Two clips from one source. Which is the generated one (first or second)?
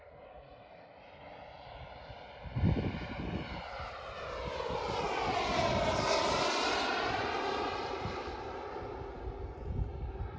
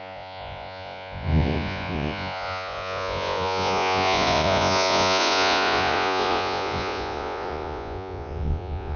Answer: second